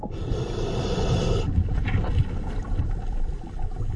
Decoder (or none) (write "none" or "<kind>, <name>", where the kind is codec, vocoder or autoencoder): vocoder, BigVGAN v2